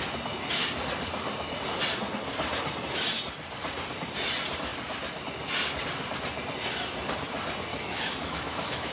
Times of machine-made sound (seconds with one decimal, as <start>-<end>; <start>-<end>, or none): 7.7-8.9